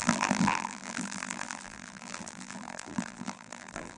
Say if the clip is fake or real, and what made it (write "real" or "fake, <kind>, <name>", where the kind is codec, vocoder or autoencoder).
fake, vocoder, BigVGAN v2